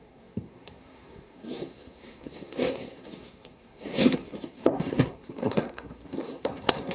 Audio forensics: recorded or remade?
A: remade